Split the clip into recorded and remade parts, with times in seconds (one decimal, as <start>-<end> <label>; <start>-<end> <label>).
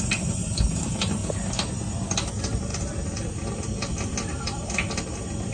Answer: 0.0-2.7 recorded; 2.7-5.0 remade; 5.0-5.5 recorded